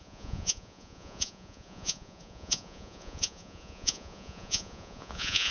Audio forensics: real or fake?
fake